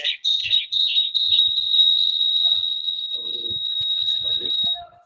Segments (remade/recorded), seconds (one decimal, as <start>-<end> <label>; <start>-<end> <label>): 0.0-0.4 recorded; 0.4-3.5 remade; 3.5-3.9 recorded; 3.9-4.5 remade; 4.5-5.1 recorded